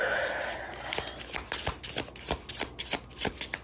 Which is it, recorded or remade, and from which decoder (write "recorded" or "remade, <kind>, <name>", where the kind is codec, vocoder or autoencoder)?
recorded